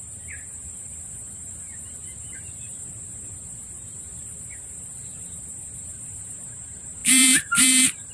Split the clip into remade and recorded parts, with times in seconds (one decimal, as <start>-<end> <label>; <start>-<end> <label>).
0.0-8.1 remade